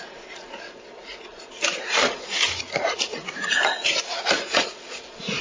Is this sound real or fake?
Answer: fake